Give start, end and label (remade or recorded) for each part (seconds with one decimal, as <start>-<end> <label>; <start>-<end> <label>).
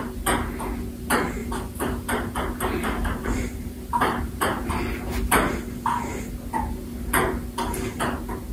0.0-1.4 recorded; 1.4-4.8 remade; 4.8-8.5 recorded